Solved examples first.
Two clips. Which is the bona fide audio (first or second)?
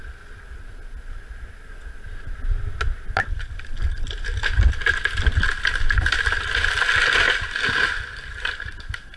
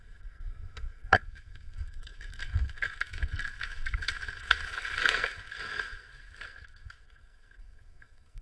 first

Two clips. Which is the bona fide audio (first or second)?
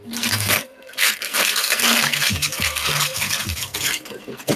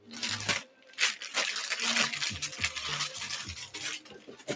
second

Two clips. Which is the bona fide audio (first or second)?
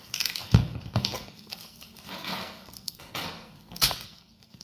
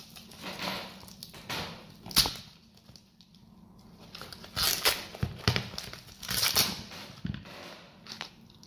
second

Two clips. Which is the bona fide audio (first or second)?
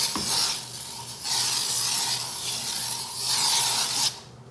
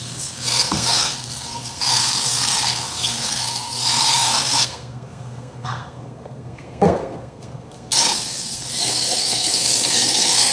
first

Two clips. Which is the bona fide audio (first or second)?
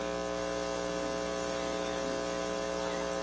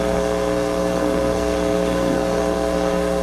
first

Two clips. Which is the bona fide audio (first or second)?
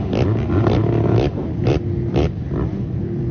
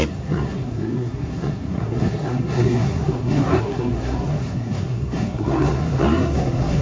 first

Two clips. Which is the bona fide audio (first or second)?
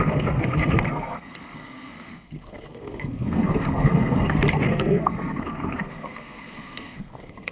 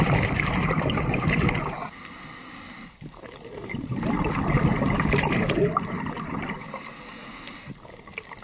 second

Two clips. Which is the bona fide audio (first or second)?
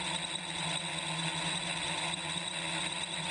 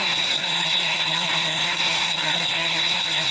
first